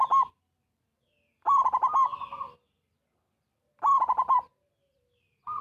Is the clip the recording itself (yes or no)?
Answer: no